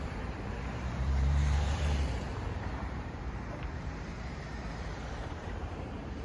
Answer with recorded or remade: remade